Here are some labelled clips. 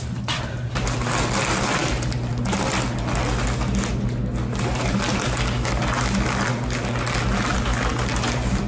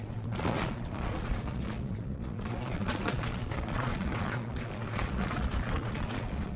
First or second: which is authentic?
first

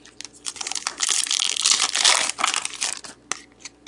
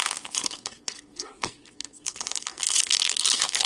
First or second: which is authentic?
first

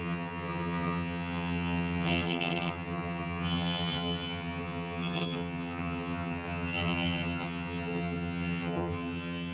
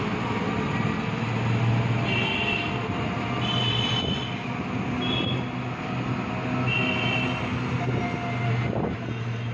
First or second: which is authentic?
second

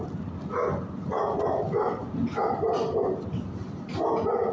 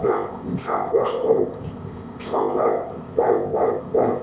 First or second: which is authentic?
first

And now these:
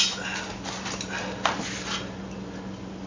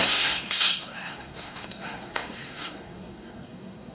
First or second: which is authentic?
first